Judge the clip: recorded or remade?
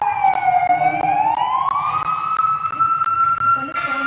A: recorded